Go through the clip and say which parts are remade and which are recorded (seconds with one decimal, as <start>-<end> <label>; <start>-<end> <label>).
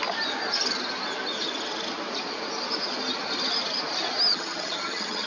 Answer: 0.0-4.3 recorded; 4.3-5.3 remade